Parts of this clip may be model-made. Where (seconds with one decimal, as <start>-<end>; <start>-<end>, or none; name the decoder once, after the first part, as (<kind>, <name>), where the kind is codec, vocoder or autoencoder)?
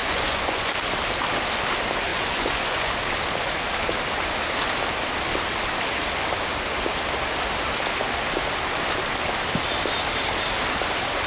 0.0-0.7 (vocoder, Vocos); 2.1-2.9